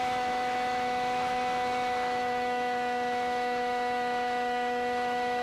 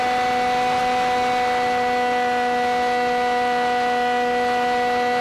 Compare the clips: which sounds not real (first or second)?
first